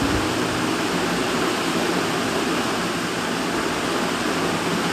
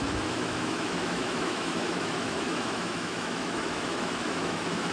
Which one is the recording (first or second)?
first